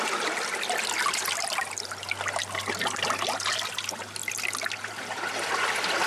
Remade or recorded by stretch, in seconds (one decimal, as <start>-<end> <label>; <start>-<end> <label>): 0.0-6.1 recorded